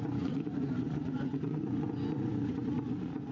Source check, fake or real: fake